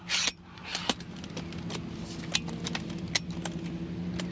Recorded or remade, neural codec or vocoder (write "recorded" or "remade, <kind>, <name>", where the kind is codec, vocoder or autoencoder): recorded